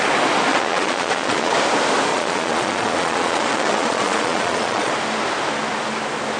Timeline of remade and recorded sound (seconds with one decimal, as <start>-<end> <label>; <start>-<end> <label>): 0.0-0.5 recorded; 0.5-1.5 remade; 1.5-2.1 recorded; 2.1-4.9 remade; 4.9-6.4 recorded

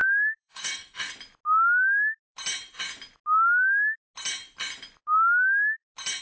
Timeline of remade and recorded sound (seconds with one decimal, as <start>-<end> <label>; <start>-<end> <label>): 0.0-1.1 remade; 1.1-6.2 recorded

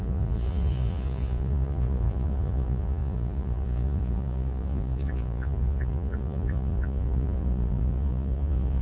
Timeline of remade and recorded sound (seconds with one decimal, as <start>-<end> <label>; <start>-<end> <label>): 0.0-8.8 remade

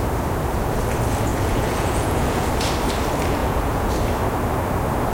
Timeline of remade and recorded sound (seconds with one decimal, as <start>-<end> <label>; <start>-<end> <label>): 0.0-1.3 recorded; 1.3-2.5 remade; 2.5-3.4 recorded; 3.4-3.9 remade; 3.9-5.1 recorded

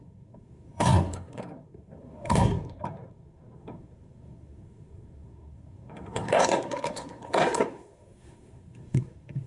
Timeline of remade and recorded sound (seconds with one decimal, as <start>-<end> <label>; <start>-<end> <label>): 0.0-9.5 remade